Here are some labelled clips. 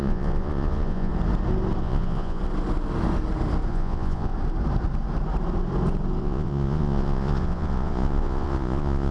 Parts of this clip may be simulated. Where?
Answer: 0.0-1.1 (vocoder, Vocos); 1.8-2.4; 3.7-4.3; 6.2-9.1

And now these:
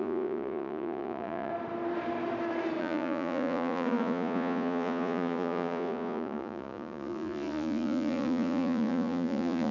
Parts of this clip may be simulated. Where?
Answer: 0.0-1.5 (vocoder, Vocos); 2.8-9.7

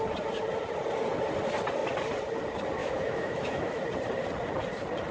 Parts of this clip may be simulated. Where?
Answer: 2.8-3.8 (autoencoder, DAC-VAE)

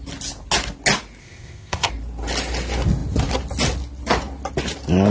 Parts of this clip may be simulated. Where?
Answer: 1.2-1.9 (codec, ZipCodec)

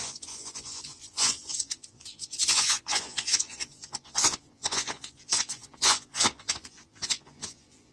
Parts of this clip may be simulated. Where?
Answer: 0.0-7.9 (vocoder, Vocos)

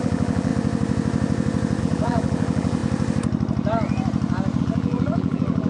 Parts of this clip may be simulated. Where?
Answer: 0.0-0.5 (vocoder, BigVGAN v2); 1.8-2.8; 4.6-5.7